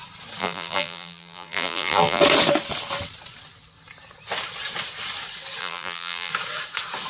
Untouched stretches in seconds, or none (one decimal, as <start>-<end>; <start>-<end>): 0.0-0.4; 2.2-5.6; 6.3-7.1

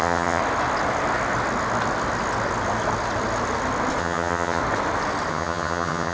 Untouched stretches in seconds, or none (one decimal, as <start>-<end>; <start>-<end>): 0.4-4.0; 4.6-5.3